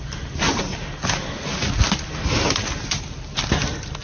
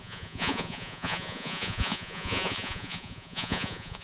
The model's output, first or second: second